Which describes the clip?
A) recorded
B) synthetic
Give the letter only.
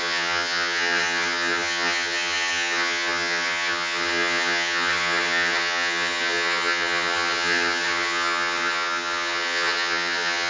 B